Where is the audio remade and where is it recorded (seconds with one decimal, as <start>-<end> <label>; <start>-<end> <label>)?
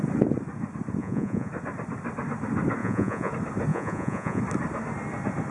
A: 0.0-1.0 recorded; 1.0-1.5 remade; 1.5-2.8 recorded; 2.8-3.3 remade; 3.3-3.7 recorded; 3.7-4.4 remade; 4.4-5.5 recorded